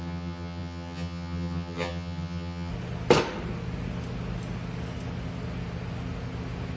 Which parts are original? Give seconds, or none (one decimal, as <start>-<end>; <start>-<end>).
2.7-6.8